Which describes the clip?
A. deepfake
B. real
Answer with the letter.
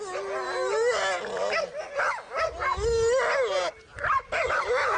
B